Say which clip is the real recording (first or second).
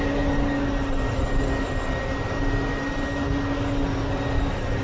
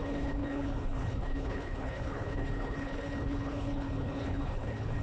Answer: first